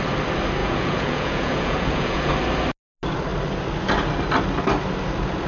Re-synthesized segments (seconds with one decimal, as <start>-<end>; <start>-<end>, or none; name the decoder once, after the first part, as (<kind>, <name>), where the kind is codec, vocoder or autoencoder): 0.6-2.3 (vocoder, Vocos)